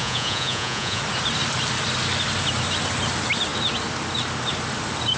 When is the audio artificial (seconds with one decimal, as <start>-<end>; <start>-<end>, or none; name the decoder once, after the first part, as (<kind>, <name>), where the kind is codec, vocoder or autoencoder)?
0.0-1.0 (vocoder, Vocos)